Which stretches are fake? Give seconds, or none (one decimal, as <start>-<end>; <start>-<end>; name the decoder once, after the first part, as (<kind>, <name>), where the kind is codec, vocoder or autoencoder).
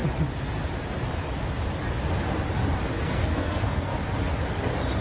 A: 3.0-3.9 (codec, SNAC)